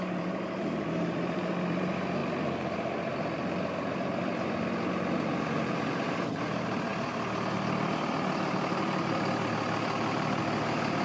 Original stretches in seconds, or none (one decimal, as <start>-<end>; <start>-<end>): 2.2-4.2